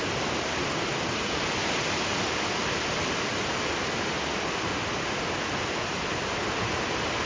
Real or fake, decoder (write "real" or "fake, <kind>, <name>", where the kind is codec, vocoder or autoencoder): real